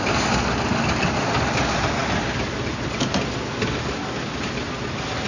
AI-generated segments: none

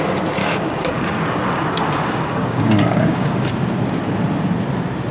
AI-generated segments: 0.4-3.5 (codec, DAC)

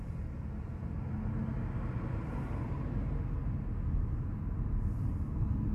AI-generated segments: none

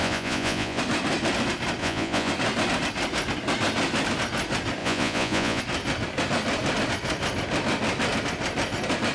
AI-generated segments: 0.0-0.8 (vocoder, Vocos); 1.8-2.3; 4.8-5.6